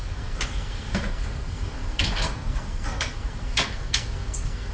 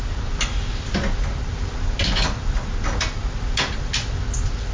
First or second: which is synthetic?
first